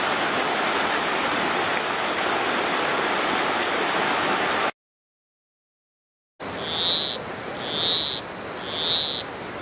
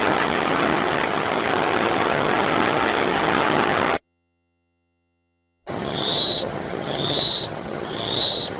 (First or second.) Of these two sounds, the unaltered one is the first